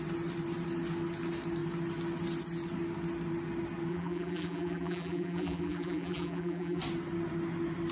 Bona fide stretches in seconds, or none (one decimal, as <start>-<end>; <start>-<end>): 0.0-3.9; 6.8-7.9